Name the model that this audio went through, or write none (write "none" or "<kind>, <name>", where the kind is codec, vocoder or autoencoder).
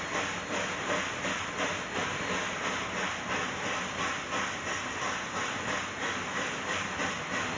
none